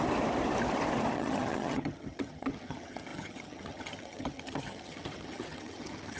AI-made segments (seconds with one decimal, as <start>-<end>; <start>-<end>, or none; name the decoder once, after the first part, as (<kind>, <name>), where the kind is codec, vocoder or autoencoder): 1.1-6.2 (vocoder, HiFi-GAN)